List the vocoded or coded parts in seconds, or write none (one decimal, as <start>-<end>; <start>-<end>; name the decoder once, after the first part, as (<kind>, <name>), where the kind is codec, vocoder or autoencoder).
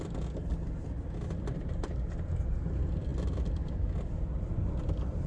none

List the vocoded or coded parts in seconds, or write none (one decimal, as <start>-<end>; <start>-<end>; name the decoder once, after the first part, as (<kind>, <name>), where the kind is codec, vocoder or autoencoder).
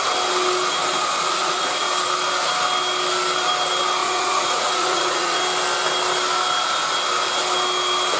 1.2-1.8 (vocoder, Vocos); 4.0-5.4